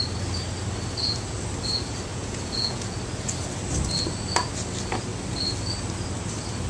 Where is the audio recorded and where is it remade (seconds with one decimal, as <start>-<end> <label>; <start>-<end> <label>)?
0.0-2.1 recorded; 2.1-3.0 remade; 3.0-6.7 recorded